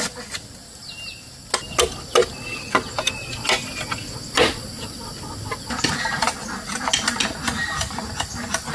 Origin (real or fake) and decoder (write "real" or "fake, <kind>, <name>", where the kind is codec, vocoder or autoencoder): real